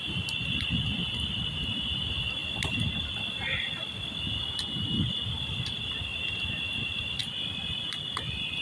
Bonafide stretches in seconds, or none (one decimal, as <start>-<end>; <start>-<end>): 0.0-8.6